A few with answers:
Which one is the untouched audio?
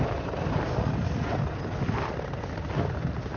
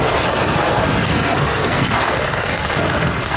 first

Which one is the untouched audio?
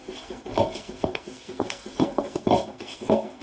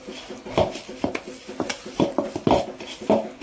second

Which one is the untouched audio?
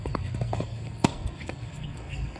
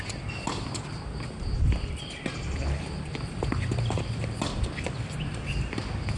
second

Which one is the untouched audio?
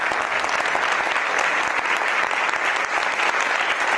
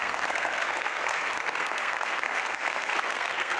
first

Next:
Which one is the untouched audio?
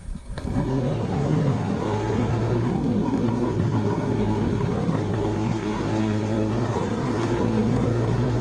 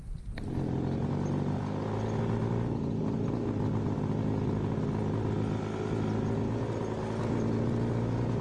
second